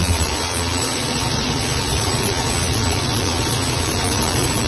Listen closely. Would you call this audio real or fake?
fake